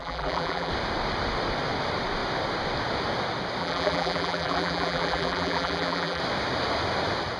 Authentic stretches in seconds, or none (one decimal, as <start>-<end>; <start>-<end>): 0.7-3.6; 6.2-7.4